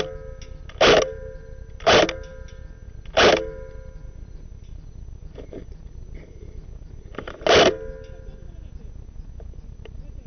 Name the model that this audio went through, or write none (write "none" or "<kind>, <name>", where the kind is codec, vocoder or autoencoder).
none